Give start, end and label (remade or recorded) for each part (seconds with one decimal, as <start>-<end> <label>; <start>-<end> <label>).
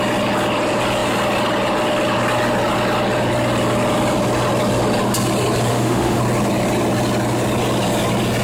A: 0.0-5.7 recorded; 5.7-6.2 remade; 6.2-8.4 recorded